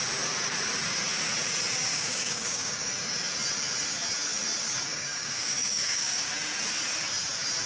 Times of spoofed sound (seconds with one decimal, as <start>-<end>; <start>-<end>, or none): 1.9-2.9; 4.9-6.3

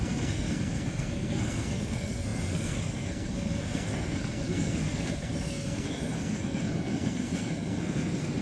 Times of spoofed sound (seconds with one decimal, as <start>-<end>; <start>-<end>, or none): 0.0-8.4

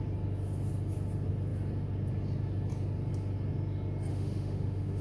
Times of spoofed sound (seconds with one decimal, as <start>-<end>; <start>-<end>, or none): 4.1-5.0

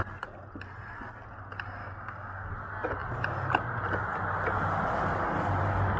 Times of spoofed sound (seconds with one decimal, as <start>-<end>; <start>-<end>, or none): 1.8-2.5